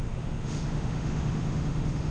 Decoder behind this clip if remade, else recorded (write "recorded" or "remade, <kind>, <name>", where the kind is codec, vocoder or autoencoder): remade, autoencoder, DAC-VAE